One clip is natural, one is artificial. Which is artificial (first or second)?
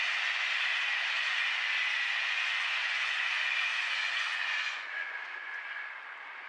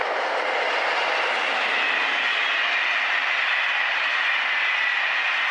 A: first